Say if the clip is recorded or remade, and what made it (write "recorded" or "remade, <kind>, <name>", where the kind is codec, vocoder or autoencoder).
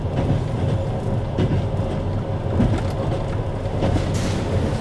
recorded